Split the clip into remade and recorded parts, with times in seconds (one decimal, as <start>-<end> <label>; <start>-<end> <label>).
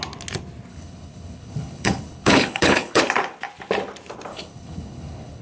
0.0-0.7 recorded; 0.7-3.0 remade; 3.0-4.3 recorded; 4.3-5.4 remade